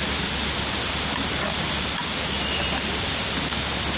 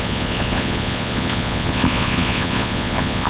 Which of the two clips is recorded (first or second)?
first